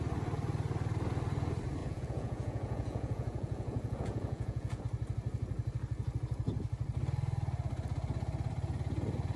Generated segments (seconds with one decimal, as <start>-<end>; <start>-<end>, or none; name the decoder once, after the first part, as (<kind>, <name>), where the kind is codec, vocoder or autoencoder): 1.8-4.8 (vocoder, Vocos)